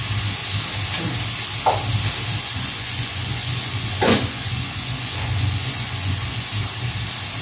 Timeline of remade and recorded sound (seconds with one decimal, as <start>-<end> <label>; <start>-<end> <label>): 0.0-2.4 recorded; 2.4-6.5 remade; 6.5-7.4 recorded